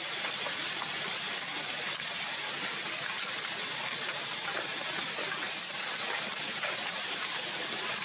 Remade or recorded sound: remade